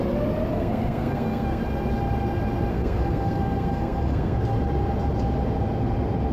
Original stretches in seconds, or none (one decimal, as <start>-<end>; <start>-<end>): 0.0-0.5; 1.6-2.7; 4.4-6.3